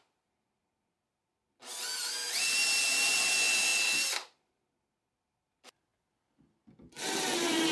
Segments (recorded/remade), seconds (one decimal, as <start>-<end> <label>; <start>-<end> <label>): 0.0-7.7 recorded